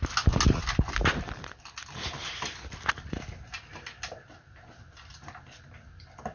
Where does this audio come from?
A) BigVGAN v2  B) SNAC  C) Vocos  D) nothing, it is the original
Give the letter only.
D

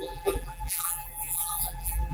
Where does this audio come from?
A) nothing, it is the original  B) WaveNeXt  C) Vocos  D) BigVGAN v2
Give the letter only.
D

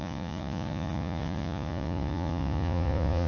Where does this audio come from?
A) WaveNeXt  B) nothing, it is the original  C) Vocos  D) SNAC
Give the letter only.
C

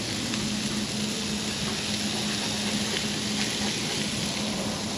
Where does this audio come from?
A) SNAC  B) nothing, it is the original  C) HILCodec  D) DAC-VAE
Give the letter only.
B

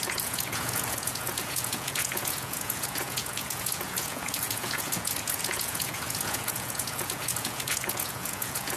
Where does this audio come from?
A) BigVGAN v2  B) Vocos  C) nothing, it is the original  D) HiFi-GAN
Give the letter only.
B